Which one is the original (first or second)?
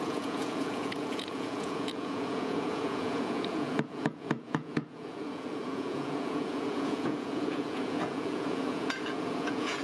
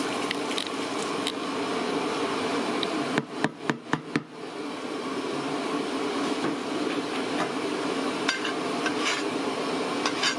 second